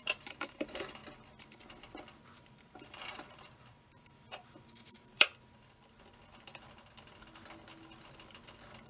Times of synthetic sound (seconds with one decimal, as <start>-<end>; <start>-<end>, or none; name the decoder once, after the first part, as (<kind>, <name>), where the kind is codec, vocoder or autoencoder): 0.0-1.0 (vocoder, BigVGAN v2); 2.4-5.3